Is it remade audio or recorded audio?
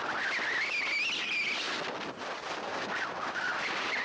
recorded